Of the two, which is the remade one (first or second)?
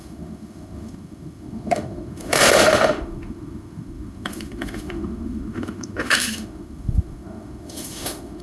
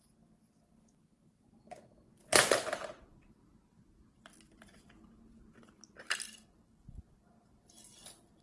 first